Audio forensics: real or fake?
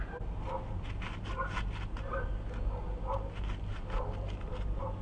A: real